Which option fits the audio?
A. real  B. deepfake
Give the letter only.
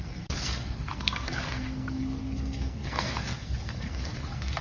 B